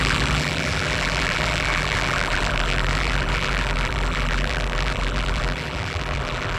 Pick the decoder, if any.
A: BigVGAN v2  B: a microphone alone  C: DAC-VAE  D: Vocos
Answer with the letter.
A